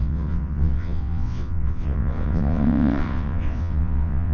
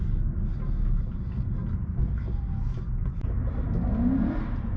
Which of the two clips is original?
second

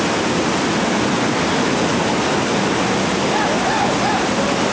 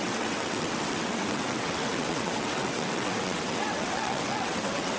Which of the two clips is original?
first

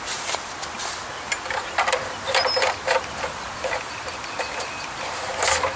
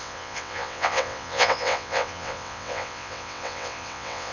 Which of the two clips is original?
first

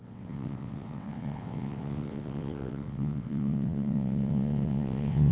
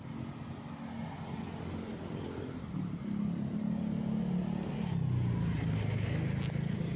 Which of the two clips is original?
second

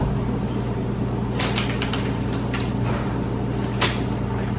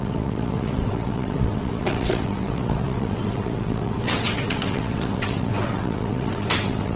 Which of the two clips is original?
first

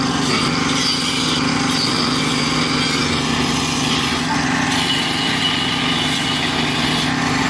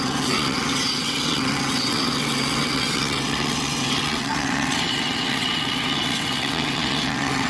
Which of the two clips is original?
first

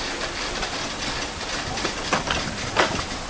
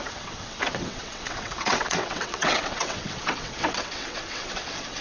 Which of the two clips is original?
first